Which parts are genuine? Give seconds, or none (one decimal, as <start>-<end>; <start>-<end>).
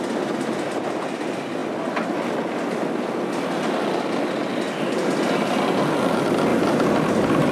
0.0-7.5